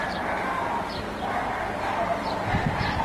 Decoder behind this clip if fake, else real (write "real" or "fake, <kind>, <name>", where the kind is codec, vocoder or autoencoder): fake, vocoder, BigVGAN v2